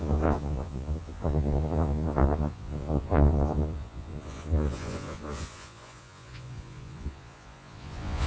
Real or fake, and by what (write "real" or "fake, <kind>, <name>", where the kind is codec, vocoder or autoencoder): fake, vocoder, Vocos